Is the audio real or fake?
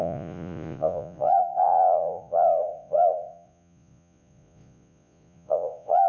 fake